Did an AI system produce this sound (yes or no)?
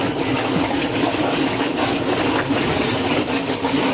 yes